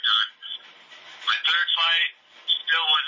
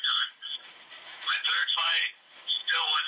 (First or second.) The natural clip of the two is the first